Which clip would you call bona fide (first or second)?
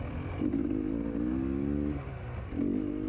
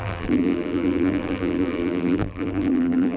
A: first